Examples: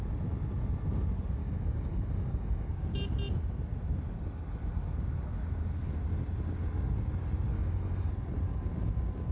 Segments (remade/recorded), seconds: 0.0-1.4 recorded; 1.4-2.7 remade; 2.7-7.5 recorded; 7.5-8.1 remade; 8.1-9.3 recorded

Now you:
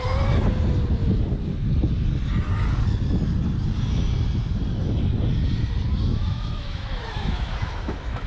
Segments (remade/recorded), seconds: 0.0-6.1 recorded; 6.1-8.3 remade